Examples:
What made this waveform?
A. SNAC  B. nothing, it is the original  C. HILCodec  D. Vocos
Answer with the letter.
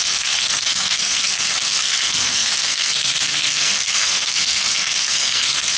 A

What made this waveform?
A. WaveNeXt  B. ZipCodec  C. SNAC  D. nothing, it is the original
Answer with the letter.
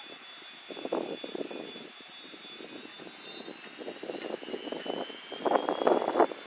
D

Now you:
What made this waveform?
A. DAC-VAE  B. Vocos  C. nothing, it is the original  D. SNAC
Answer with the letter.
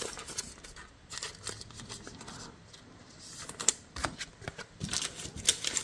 C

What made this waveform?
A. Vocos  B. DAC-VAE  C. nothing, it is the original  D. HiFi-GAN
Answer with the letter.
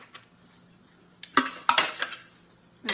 C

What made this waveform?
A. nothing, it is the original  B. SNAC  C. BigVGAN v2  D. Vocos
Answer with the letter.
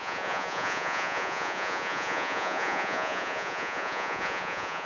D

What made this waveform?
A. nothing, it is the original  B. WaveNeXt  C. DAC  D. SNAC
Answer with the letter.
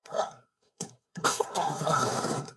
D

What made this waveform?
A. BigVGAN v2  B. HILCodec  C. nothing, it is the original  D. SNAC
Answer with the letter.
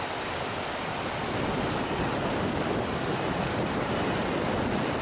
C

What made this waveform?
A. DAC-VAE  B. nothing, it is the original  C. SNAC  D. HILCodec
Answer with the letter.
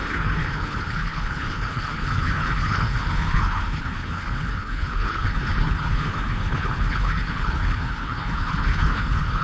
D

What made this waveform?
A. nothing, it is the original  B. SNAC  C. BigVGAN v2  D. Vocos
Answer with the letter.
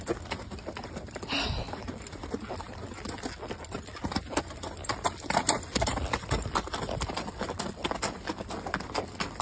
A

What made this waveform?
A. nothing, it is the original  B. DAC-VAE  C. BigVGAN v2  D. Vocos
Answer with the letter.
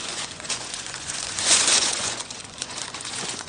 D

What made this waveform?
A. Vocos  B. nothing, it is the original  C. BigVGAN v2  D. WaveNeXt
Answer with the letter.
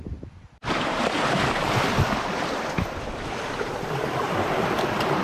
C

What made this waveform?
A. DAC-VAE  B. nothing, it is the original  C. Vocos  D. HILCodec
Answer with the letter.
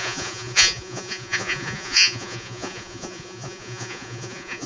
C